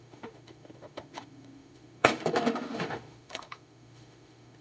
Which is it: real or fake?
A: fake